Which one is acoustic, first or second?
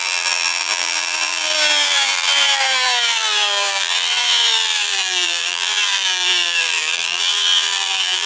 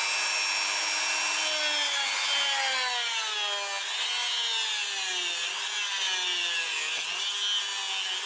second